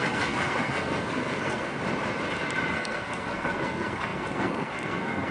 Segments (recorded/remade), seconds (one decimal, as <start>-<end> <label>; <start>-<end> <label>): 0.0-1.8 remade; 1.8-2.7 recorded; 2.7-5.3 remade